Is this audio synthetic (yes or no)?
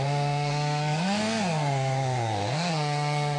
yes